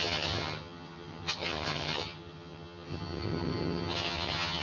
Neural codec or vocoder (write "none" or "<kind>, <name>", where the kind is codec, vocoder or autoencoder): vocoder, HiFi-GAN